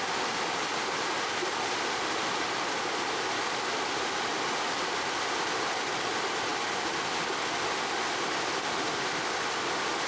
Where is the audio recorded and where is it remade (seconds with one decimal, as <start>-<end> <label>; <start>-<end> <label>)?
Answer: 0.0-10.1 recorded